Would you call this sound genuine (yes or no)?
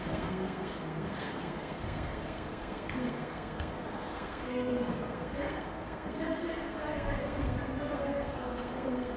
no